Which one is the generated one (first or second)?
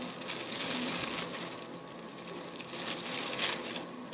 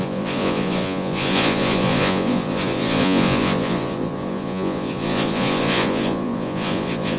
second